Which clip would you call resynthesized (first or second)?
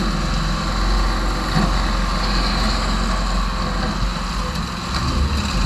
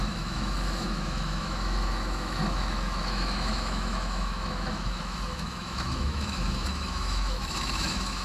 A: second